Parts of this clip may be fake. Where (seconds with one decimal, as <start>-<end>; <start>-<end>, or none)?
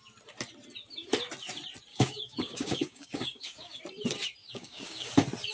1.9-3.8; 4.4-5.1